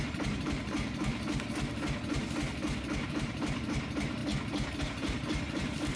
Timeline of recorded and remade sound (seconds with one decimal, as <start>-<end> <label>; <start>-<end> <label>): 0.0-1.1 remade; 1.1-3.1 recorded; 3.1-4.2 remade; 4.2-4.8 recorded; 4.8-6.0 remade